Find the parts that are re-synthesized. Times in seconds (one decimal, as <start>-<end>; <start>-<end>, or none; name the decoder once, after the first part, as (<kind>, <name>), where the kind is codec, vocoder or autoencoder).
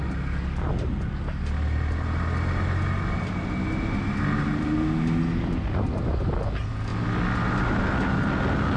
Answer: none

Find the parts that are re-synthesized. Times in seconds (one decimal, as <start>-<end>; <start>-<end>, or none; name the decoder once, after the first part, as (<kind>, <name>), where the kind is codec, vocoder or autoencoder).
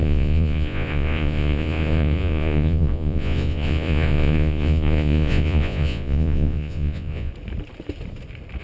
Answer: 0.0-7.3 (vocoder, Vocos)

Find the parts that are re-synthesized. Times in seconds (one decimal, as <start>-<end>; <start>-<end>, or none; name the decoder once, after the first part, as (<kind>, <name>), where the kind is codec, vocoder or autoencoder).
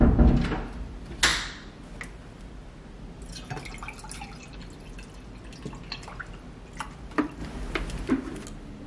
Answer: none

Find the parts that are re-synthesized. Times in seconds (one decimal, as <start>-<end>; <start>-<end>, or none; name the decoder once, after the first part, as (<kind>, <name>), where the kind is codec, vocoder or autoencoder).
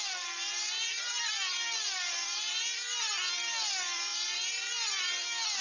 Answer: none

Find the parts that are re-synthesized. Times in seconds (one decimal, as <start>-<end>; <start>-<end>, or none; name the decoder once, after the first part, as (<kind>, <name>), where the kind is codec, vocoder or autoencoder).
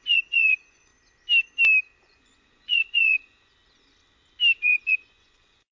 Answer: 0.0-0.9 (vocoder, Vocos); 2.0-3.5; 4.6-5.7